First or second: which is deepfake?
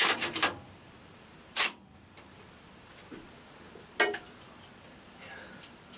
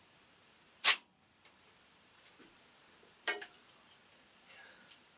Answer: second